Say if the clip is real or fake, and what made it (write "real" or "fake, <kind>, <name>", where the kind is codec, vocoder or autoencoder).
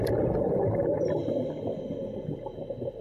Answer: real